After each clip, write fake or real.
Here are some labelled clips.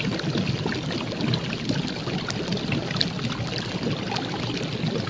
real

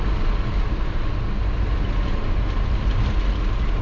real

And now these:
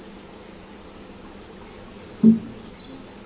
real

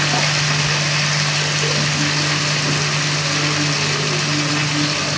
real